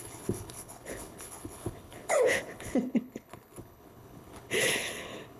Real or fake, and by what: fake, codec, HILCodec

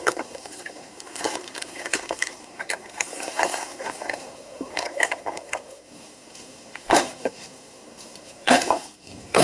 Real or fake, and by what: fake, codec, SNAC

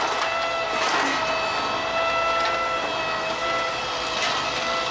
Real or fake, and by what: real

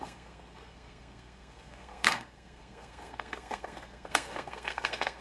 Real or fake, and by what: fake, codec, SNAC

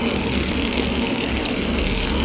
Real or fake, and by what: fake, codec, SNAC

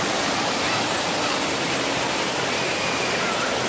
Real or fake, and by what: real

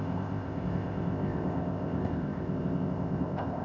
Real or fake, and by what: fake, codec, ZipCodec